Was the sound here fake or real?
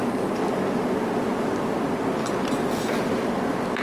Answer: real